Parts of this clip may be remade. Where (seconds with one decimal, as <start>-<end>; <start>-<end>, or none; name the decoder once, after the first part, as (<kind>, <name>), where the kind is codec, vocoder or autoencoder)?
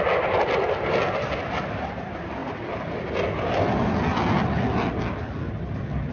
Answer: none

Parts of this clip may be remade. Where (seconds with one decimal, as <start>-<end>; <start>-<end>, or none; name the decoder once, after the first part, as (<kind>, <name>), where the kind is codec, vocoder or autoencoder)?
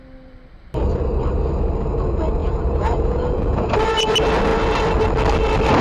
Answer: 2.4-3.7 (vocoder, Vocos)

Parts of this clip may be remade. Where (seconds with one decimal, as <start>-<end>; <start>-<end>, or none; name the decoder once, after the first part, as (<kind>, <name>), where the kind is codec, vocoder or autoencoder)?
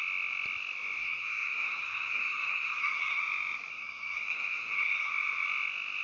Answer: 1.0-3.2 (codec, SNAC); 3.7-5.1